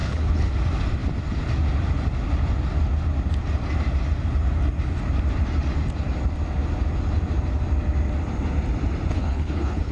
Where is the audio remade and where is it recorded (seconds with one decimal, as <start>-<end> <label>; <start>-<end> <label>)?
0.0-0.5 remade; 0.5-9.1 recorded; 9.1-9.9 remade